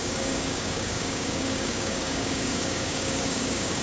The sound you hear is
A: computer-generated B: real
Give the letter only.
A